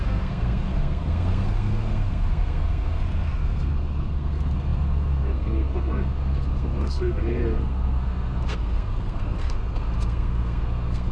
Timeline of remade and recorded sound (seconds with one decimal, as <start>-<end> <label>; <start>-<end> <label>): 0.0-11.1 remade